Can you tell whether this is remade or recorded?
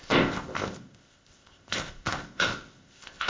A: remade